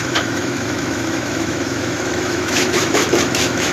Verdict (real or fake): fake